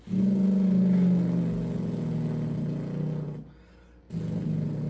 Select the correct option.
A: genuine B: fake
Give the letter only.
A